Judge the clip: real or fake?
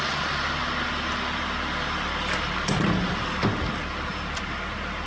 real